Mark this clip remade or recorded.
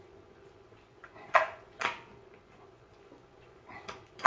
remade